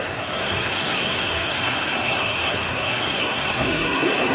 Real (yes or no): no